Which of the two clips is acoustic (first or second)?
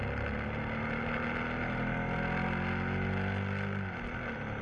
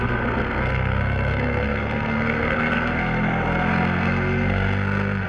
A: first